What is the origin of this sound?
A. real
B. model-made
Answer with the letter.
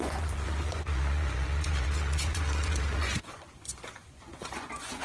B